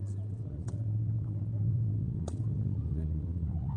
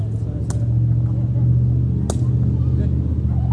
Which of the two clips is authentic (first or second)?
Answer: second